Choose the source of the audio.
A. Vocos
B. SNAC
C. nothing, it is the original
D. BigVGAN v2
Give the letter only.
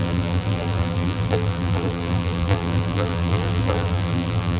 D